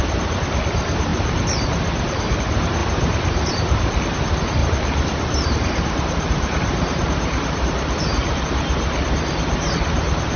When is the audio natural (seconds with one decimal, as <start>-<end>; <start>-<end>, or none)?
0.0-2.8; 3.5-4.6; 8.4-10.4